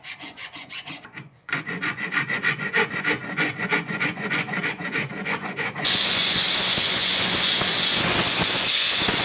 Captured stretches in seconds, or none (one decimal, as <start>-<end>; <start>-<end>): none